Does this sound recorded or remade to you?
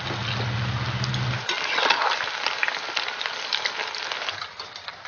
recorded